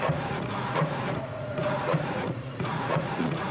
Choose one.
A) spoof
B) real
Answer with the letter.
A